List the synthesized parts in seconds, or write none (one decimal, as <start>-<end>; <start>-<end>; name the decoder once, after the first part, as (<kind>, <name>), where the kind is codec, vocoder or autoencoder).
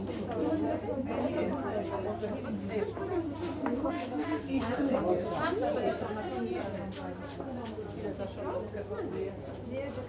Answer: 3.6-5.0 (codec, SNAC)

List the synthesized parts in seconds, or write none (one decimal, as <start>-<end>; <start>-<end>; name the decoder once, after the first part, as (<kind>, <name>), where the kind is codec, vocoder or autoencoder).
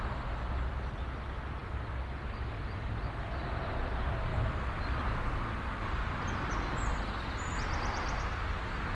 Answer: none